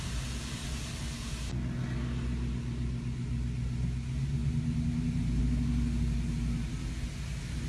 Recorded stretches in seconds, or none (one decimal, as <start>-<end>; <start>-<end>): 0.0-7.7